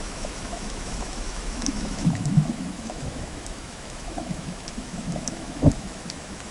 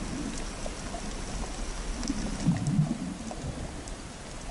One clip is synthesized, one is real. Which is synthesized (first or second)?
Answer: first